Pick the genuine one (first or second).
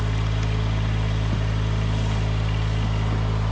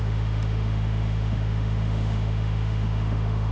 first